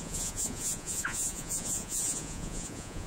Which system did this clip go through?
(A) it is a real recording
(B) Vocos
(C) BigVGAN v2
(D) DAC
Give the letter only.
B